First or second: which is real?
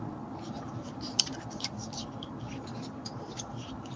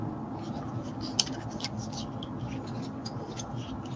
second